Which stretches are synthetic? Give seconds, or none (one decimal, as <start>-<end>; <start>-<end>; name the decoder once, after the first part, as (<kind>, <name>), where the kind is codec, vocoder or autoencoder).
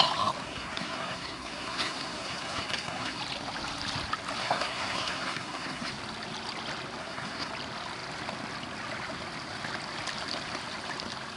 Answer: 0.4-3.2 (codec, SNAC); 4.4-5.9; 7.0-7.5